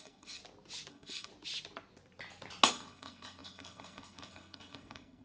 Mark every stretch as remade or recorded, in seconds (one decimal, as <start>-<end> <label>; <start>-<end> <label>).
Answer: 0.0-0.4 remade; 0.4-0.9 recorded; 0.9-1.3 remade; 1.3-2.7 recorded; 2.7-5.2 remade

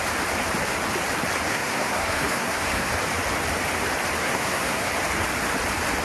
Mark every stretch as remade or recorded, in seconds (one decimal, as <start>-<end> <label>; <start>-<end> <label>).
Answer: 0.0-1.5 recorded; 1.5-2.9 remade; 2.9-4.2 recorded; 4.2-4.9 remade; 4.9-6.0 recorded

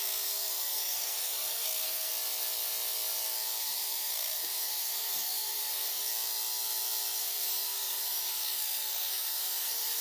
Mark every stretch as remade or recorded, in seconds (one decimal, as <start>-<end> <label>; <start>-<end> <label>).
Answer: 0.0-2.1 remade; 2.1-3.6 recorded; 3.6-6.1 remade; 6.1-7.2 recorded; 7.2-10.0 remade